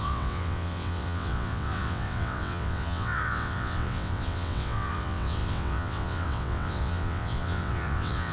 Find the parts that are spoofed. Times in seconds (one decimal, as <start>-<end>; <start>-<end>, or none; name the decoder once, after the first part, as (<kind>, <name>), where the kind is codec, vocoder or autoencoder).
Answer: 0.0-8.3 (vocoder, WaveNeXt)